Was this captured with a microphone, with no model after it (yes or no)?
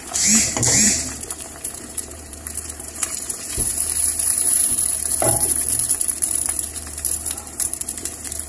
no